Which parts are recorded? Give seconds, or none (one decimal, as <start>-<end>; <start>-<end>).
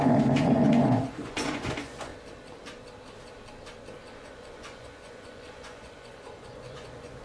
2.1-4.2